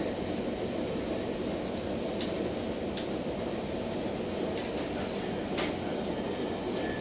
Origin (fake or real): real